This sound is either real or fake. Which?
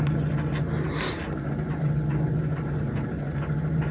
real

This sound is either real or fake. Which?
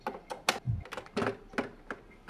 real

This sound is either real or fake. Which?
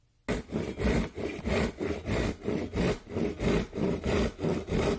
real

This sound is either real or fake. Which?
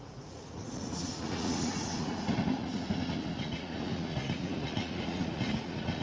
fake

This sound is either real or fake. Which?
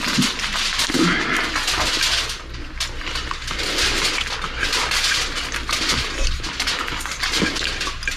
real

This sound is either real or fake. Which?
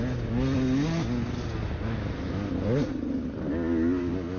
real